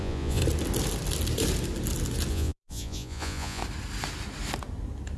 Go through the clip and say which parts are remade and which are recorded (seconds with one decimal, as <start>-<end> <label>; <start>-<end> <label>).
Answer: 0.0-0.4 remade; 0.4-2.3 recorded; 2.3-3.6 remade; 3.6-5.2 recorded